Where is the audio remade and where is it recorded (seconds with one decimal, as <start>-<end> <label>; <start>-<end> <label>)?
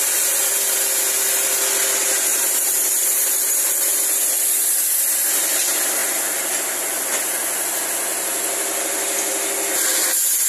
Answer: 0.0-2.3 recorded; 2.3-3.9 remade; 3.9-10.5 recorded